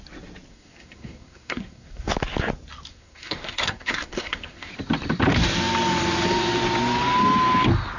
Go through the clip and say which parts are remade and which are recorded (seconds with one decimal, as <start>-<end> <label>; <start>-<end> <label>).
0.0-0.5 recorded; 0.5-2.1 remade; 2.1-2.9 recorded; 2.9-4.7 remade; 4.7-8.0 recorded